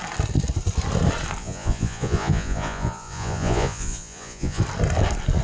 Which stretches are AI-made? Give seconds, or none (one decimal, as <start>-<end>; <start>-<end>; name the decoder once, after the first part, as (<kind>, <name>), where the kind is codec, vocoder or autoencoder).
1.4-4.6 (vocoder, Vocos)